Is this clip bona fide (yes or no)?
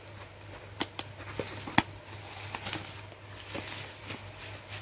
yes